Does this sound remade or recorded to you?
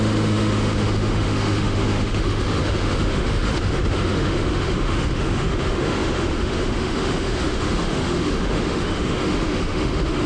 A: remade